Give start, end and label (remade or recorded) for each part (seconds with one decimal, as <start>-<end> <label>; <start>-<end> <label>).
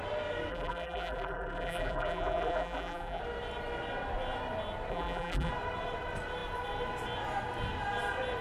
0.0-0.5 recorded; 0.5-3.2 remade; 3.2-4.9 recorded; 4.9-5.5 remade; 5.5-8.4 recorded